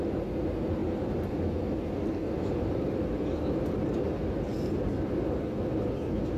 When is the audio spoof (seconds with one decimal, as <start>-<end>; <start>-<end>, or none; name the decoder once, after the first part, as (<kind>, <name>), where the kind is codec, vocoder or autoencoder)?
0.8-4.0 (vocoder, BigVGAN v2); 4.5-5.7